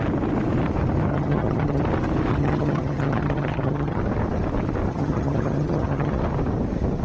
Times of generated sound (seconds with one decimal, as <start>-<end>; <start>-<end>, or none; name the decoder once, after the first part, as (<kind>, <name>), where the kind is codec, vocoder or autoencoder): 1.1-1.8 (vocoder, HiFi-GAN); 2.3-4.0; 4.9-6.2